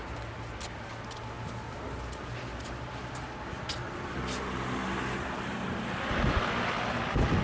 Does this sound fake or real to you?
real